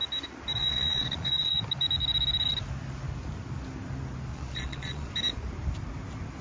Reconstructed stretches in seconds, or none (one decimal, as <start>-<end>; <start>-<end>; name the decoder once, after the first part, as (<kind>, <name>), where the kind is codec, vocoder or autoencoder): 0.6-1.6 (vocoder, Vocos); 4.3-5.1